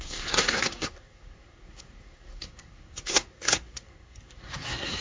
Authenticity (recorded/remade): remade